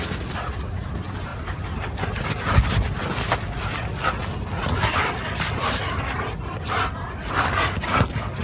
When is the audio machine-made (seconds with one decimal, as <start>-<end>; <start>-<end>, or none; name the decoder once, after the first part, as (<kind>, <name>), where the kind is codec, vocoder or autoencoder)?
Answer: none